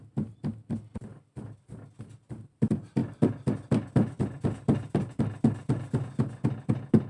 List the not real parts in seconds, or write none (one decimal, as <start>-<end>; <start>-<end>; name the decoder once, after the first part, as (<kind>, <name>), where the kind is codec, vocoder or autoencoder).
none